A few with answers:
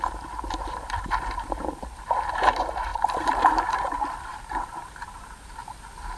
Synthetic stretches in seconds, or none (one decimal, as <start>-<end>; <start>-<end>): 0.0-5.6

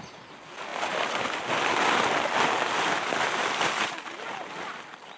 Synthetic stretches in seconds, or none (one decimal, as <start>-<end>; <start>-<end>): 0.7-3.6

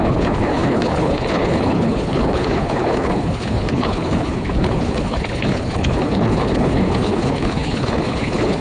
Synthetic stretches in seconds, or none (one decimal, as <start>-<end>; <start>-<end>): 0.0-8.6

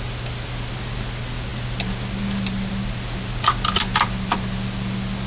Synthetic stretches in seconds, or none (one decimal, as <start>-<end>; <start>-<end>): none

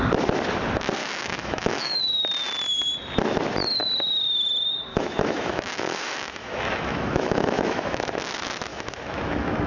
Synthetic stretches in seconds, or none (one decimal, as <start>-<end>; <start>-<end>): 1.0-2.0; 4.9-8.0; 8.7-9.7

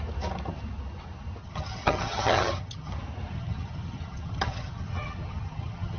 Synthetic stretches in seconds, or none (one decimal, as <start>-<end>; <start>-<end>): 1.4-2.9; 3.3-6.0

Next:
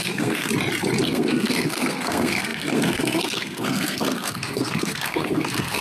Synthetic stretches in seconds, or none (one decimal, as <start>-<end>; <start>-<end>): 0.0-0.5; 1.0-5.8

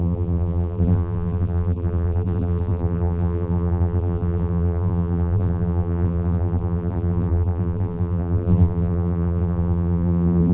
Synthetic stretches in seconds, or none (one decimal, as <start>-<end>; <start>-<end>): 0.0-10.5